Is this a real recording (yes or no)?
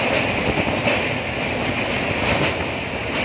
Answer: yes